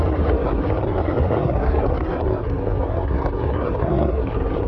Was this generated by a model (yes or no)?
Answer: yes